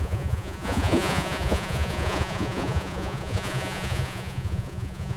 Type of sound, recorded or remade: remade